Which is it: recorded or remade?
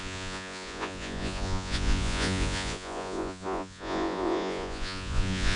remade